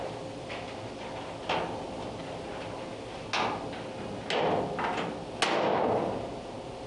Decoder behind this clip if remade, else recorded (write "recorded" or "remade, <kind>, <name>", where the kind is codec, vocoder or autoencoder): recorded